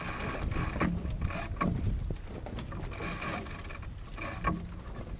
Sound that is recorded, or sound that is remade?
recorded